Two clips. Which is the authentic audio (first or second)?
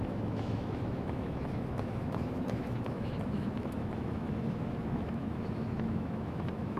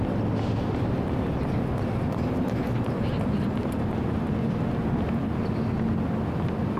second